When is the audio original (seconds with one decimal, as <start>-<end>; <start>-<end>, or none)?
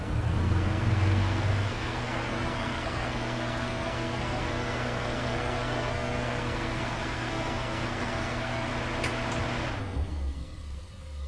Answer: 8.7-9.8